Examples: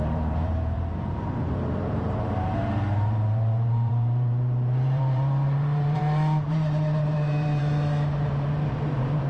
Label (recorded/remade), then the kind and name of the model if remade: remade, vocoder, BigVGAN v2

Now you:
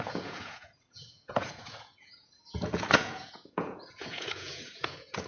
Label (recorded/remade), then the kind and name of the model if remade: remade, vocoder, Vocos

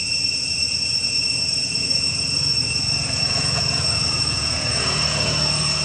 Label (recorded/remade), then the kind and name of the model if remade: remade, vocoder, Vocos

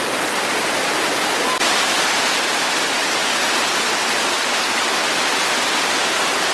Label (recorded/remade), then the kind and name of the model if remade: remade, vocoder, BigVGAN v2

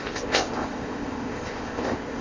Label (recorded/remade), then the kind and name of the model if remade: remade, codec, ZipCodec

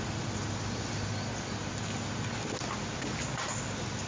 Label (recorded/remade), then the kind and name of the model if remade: recorded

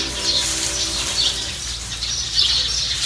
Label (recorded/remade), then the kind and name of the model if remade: recorded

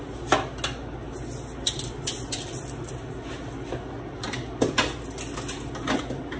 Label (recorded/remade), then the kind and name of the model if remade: recorded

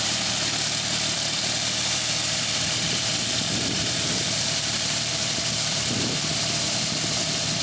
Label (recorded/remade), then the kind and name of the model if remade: remade, vocoder, BigVGAN v2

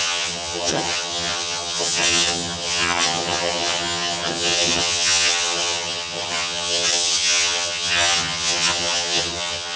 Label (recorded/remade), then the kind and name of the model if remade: remade, vocoder, HiFi-GAN